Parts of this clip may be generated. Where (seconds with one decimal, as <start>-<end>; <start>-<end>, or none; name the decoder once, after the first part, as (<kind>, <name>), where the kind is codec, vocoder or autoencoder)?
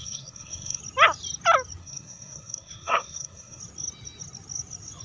0.0-0.8 (codec, SNAC); 1.8-3.6